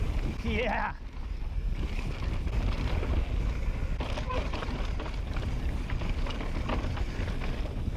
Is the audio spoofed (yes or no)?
no